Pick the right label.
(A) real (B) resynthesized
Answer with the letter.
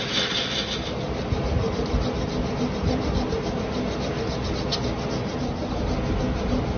A